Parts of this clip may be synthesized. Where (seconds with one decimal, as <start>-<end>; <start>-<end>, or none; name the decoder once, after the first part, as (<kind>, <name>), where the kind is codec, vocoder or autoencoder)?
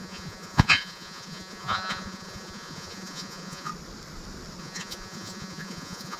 0.0-3.7 (vocoder, Vocos); 4.6-6.2